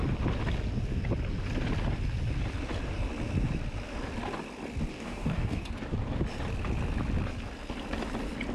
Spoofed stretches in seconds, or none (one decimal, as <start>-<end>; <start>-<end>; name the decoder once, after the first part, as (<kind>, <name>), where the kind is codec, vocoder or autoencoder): 4.9-5.7 (codec, DAC)